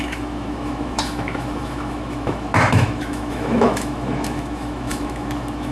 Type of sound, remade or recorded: remade